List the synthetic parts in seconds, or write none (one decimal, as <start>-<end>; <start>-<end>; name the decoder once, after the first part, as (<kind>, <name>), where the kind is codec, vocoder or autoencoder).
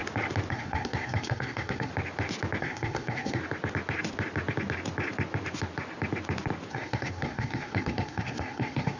0.5-1.9 (codec, SNAC); 2.6-3.4; 6.7-9.0